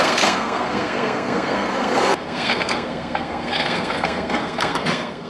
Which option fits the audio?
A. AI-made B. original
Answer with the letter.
A